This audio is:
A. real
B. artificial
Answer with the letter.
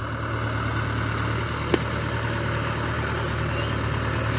A